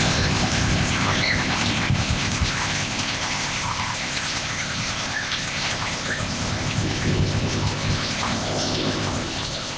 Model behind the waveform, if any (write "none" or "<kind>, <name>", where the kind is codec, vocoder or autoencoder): codec, ZipCodec